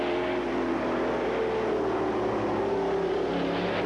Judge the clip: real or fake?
real